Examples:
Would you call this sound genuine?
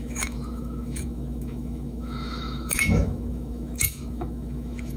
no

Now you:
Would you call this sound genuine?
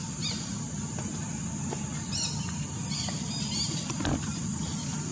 yes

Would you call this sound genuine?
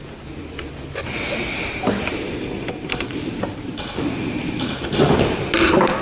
yes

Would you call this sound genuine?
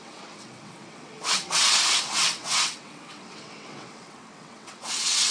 no